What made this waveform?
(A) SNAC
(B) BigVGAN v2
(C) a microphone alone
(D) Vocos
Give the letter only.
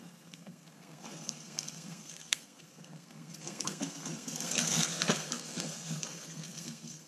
A